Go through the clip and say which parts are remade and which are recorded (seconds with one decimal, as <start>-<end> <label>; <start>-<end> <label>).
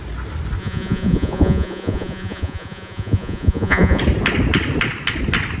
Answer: 0.0-0.6 recorded; 0.6-4.0 remade; 4.0-5.6 recorded